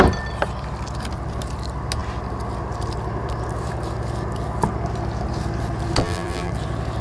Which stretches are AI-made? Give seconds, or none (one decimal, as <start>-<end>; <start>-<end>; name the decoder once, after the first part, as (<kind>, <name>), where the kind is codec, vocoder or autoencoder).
6.0-6.5 (vocoder, BigVGAN v2)